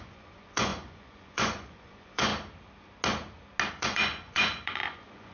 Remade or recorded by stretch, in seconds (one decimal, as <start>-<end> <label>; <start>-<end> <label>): 0.0-2.3 remade; 2.3-3.7 recorded; 3.7-5.3 remade